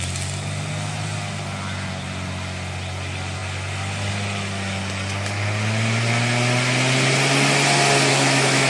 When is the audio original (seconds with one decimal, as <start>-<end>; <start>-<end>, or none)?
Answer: 0.0-8.1